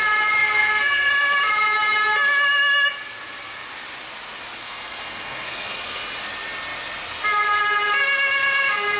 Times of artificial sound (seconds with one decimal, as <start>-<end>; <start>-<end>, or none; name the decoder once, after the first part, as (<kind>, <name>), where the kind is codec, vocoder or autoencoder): 0.4-1.1 (codec, SNAC); 4.6-6.0